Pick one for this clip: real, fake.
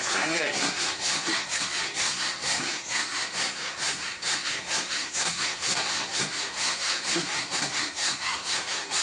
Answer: fake